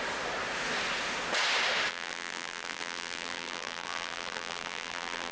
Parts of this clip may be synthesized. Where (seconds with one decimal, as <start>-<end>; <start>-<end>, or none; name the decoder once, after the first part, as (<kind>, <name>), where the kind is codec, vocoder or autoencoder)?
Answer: 1.9-5.3 (vocoder, BigVGAN v2)